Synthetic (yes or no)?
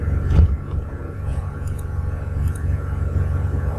yes